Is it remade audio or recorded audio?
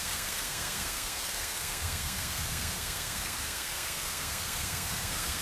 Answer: remade